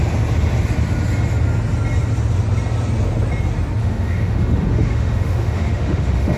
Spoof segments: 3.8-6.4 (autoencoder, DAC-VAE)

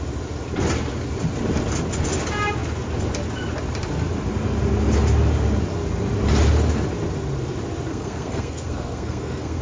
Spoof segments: 7.9-9.6 (codec, SNAC)

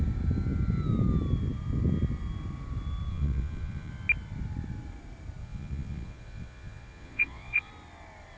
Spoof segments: 3.1-3.9 (vocoder, Vocos); 5.4-7.7

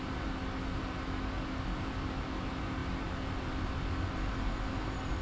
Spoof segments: none

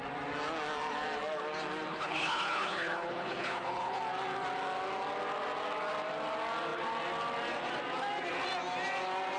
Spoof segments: 1.9-4.0 (codec, HILCodec)